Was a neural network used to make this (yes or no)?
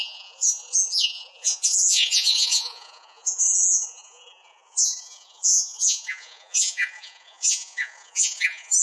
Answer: yes